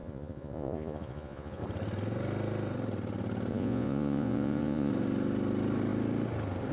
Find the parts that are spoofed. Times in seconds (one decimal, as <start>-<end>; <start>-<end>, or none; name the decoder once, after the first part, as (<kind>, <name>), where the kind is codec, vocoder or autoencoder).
0.0-1.6 (vocoder, Vocos); 3.5-4.9